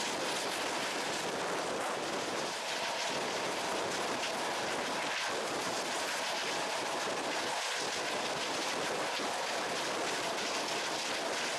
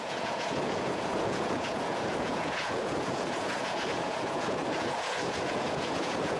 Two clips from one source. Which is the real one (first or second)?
first